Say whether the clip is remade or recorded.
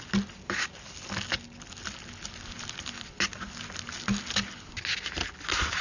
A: recorded